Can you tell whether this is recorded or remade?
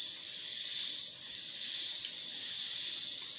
recorded